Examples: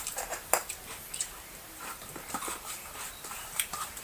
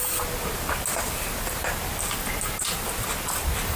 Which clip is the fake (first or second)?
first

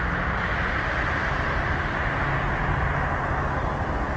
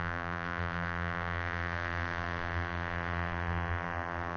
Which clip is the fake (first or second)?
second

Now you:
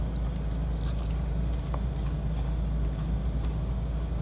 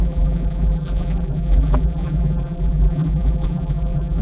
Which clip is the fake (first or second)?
second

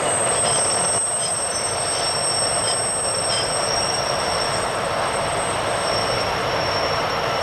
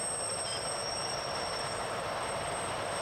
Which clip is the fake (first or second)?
second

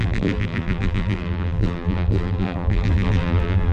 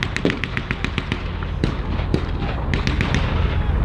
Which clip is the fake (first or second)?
first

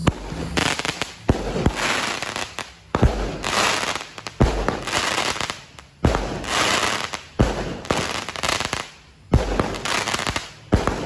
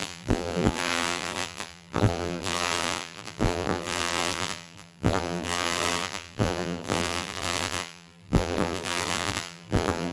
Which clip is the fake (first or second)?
second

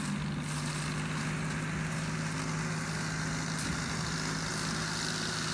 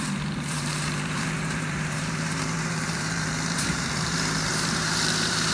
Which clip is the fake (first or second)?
second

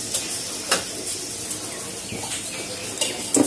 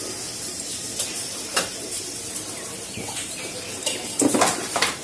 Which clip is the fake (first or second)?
second